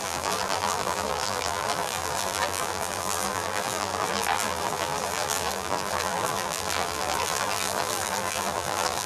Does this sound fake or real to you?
fake